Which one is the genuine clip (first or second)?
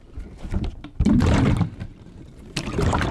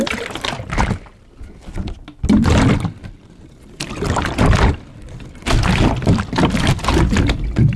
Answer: second